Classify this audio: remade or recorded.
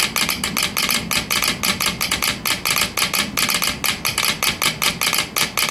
recorded